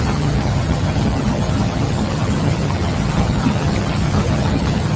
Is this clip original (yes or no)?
no